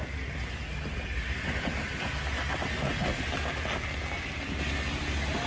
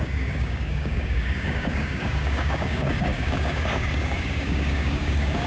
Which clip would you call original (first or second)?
first